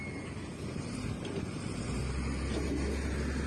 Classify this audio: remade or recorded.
recorded